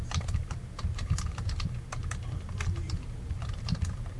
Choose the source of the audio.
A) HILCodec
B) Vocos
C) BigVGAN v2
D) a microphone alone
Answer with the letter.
C